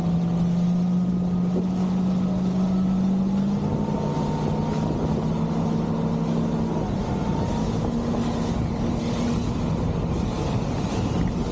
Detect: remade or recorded recorded